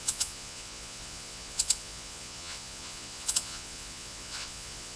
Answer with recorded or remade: remade